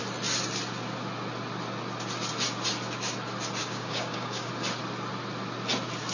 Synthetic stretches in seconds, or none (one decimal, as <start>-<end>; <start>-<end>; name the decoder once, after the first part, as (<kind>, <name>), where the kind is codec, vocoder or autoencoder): 3.6-4.5 (codec, DAC)